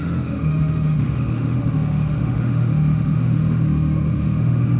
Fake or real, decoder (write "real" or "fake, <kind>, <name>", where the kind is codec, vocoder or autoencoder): fake, autoencoder, DAC-VAE